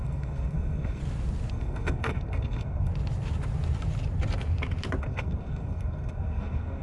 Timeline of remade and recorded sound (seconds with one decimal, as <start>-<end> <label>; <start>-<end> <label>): 0.0-1.0 remade; 1.0-1.5 recorded; 1.5-2.9 remade; 2.9-5.0 recorded; 5.0-6.8 remade